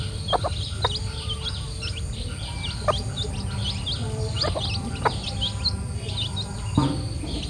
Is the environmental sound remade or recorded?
recorded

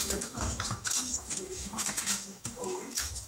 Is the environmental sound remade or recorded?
remade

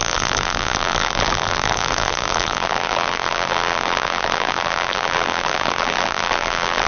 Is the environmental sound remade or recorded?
remade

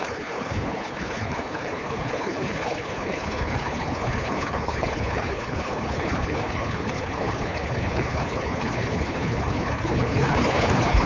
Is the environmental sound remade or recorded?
remade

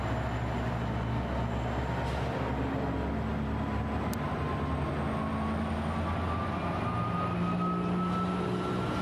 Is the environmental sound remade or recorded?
recorded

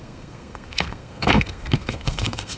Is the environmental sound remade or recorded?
remade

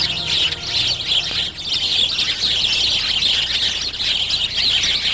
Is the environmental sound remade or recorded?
recorded